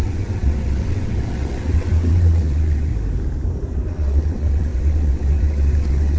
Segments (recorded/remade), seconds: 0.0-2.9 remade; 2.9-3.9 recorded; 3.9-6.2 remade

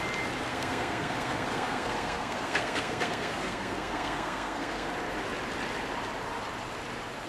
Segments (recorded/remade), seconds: 0.0-0.5 recorded; 0.5-4.9 remade; 4.9-7.3 recorded

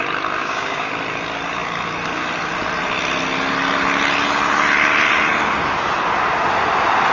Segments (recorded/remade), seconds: 0.0-0.4 recorded; 0.4-0.9 remade; 0.9-7.1 recorded

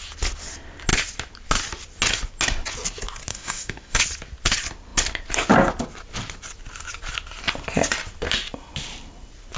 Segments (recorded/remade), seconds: 0.0-3.3 recorded; 3.3-4.0 remade; 4.0-9.6 recorded

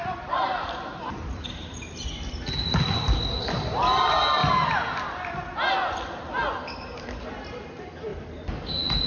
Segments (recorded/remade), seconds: 0.0-9.1 recorded

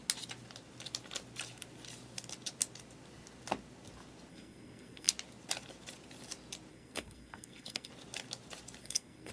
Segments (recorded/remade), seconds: 0.0-4.3 recorded; 4.3-5.1 remade; 5.1-6.7 recorded; 6.7-7.9 remade; 7.9-8.8 recorded; 8.8-9.3 remade

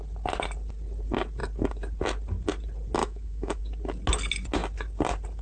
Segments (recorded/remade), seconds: 0.0-3.0 recorded; 3.0-3.6 remade; 3.6-5.4 recorded

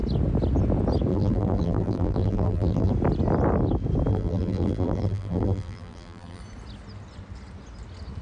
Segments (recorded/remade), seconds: 0.0-1.1 recorded; 1.1-2.9 remade; 2.9-4.1 recorded; 4.1-6.4 remade; 6.4-8.2 recorded